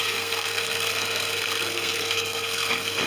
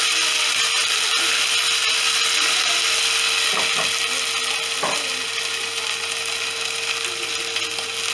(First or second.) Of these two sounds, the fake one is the first